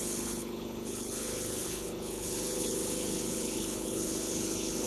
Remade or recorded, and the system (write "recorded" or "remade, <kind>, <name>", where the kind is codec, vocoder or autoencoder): remade, codec, HILCodec